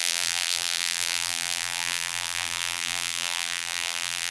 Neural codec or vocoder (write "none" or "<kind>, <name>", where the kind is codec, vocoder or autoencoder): vocoder, BigVGAN v2